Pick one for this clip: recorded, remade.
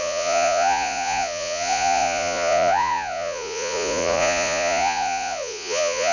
remade